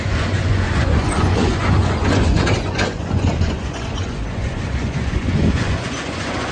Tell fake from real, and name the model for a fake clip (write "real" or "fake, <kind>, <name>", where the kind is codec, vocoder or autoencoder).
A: fake, vocoder, Vocos